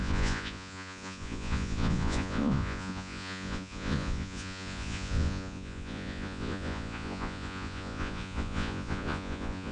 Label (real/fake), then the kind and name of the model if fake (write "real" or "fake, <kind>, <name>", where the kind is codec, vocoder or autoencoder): fake, vocoder, Vocos